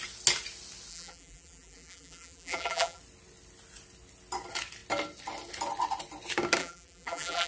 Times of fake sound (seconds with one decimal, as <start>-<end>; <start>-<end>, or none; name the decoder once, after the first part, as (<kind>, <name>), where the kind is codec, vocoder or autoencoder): 0.9-3.0 (vocoder, BigVGAN v2); 6.6-7.5